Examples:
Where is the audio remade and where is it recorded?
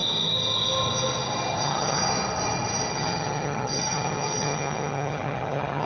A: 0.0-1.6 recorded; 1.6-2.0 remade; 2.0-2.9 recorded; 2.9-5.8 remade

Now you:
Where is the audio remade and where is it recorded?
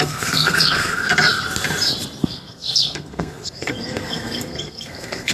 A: 0.0-1.1 remade; 1.1-2.2 recorded; 2.2-5.3 remade